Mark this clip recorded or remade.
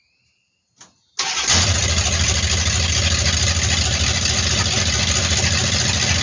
recorded